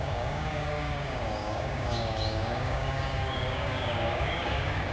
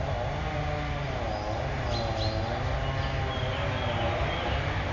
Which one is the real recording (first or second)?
second